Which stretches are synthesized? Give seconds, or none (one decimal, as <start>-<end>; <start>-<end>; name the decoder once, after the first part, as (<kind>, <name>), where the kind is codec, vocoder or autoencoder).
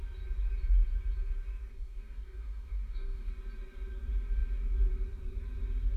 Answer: 1.7-3.3 (codec, DAC)